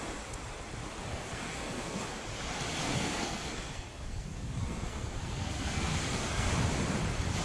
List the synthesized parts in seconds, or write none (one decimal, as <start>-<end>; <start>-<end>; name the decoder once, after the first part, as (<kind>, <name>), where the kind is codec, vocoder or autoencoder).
1.1-2.0 (codec, SNAC); 2.8-6.5